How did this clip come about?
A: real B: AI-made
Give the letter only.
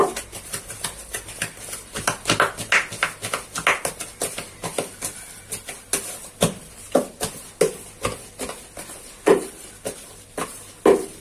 A